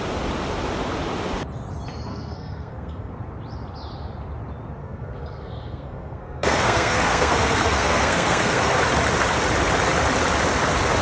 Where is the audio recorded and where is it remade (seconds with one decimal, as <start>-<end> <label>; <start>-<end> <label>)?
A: 0.0-2.1 recorded; 2.1-3.1 remade; 3.1-4.8 recorded; 4.8-8.8 remade; 8.8-11.0 recorded